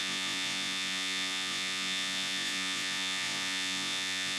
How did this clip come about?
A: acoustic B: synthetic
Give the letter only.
B